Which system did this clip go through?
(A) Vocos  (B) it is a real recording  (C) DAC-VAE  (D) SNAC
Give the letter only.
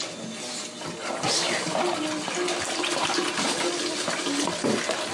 B